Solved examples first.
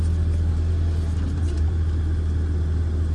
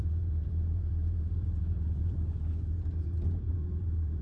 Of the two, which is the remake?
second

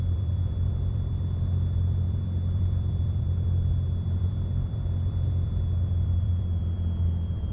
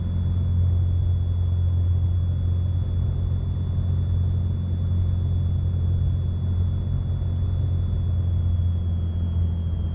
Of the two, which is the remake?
first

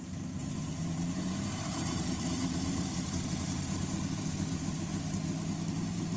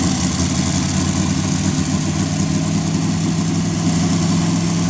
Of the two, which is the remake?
first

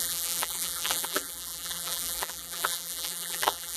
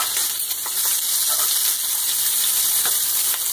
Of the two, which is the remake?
first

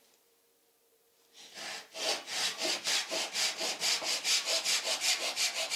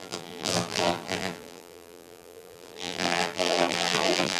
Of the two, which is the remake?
second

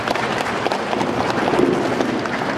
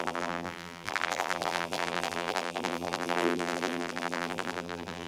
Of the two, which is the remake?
second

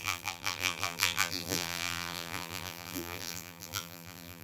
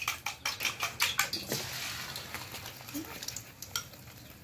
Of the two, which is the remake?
first